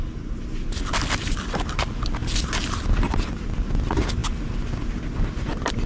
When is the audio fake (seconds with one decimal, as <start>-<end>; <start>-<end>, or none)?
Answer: none